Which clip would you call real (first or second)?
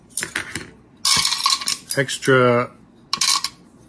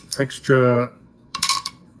first